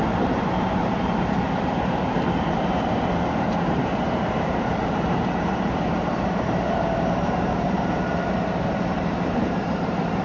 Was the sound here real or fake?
fake